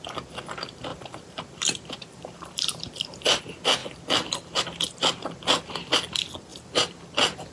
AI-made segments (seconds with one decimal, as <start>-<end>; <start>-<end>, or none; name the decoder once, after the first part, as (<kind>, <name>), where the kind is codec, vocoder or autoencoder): 0.9-3.4 (vocoder, BigVGAN v2); 6.5-7.0